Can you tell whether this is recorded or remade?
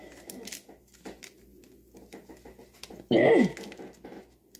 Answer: recorded